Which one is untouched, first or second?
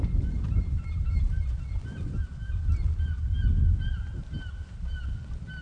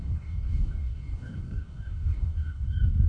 first